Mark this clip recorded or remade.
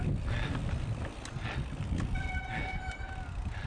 recorded